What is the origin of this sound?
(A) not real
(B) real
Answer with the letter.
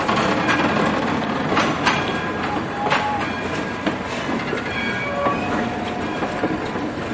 B